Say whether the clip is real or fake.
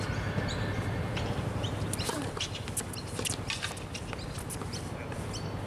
real